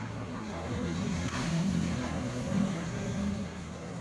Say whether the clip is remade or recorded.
remade